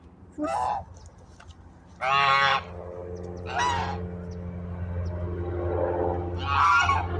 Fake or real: real